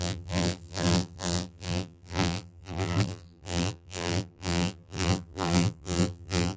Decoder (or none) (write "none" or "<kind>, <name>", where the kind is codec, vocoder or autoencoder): vocoder, BigVGAN v2